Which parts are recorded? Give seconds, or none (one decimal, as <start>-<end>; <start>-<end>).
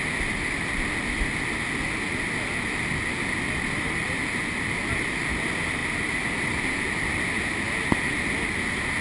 0.0-9.0